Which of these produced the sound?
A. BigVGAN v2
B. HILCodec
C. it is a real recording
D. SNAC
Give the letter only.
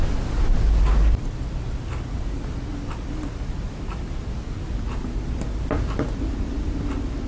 C